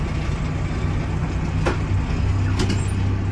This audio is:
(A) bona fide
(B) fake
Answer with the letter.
A